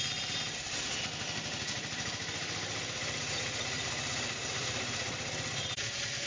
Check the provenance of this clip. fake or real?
real